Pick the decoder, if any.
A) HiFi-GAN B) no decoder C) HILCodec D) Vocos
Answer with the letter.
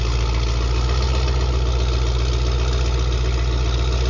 B